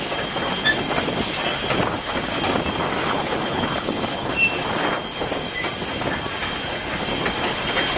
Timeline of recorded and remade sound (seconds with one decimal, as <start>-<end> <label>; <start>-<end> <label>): 0.0-3.0 recorded; 3.0-4.3 remade; 4.3-8.0 recorded